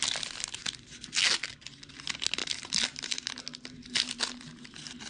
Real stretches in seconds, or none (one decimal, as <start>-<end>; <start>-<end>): 0.0-5.1